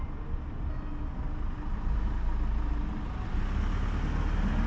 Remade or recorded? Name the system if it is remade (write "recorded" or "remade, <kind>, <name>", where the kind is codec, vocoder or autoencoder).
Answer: recorded